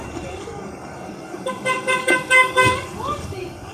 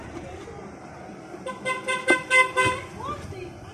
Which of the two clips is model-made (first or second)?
first